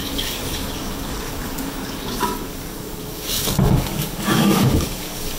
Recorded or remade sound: remade